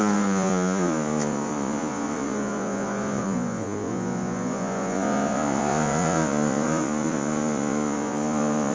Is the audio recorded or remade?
remade